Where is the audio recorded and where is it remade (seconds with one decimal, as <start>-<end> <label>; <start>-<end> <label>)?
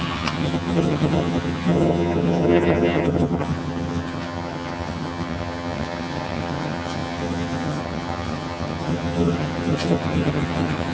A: 0.0-10.9 remade